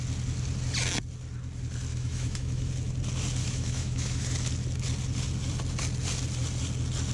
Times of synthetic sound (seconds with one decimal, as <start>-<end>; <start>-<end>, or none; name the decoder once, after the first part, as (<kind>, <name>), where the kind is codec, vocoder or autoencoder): 1.9-2.7 (autoencoder, DAC-VAE); 3.4-4.2